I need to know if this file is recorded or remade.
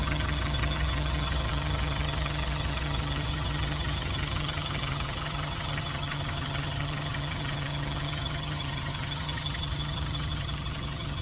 remade